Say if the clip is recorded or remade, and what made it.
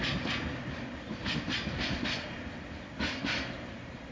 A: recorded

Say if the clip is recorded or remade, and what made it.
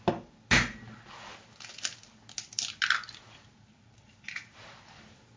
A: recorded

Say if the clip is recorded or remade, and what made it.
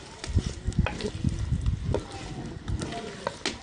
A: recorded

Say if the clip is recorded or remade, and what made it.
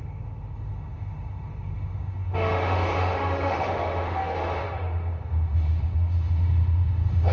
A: remade, autoencoder, DAC-VAE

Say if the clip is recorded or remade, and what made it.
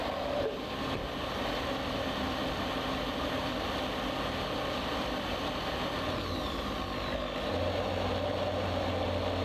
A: recorded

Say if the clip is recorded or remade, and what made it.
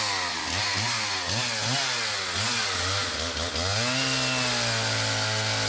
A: recorded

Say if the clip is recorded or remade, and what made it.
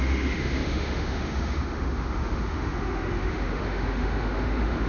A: remade, autoencoder, DAC-VAE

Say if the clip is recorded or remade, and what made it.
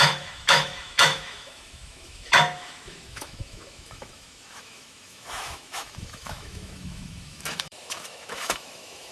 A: remade, autoencoder, DAC-VAE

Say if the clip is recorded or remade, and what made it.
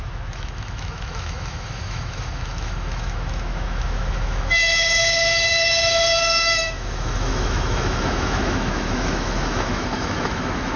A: remade, autoencoder, DAC-VAE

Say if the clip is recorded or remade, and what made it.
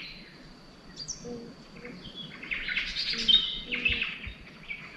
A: recorded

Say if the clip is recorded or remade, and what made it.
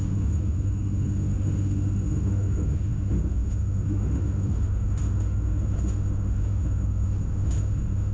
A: remade, autoencoder, DAC-VAE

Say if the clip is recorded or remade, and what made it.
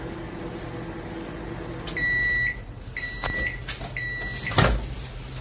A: recorded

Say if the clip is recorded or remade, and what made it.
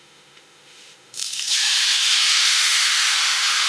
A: remade, autoencoder, DAC-VAE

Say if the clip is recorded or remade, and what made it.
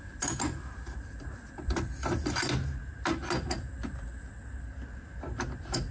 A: recorded